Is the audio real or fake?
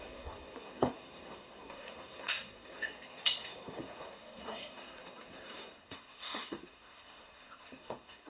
fake